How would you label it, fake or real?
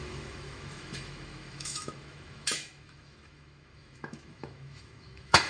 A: fake